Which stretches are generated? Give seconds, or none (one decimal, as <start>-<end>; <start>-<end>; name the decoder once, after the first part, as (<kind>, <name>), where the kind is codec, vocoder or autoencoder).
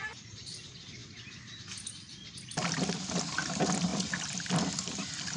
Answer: none